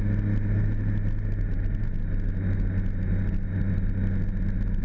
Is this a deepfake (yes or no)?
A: no